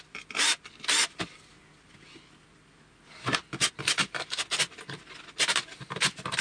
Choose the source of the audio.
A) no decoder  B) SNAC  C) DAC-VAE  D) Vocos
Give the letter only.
A